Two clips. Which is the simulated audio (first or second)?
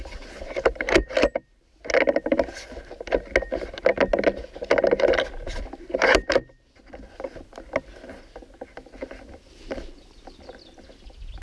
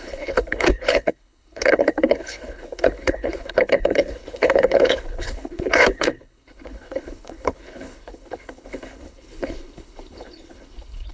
second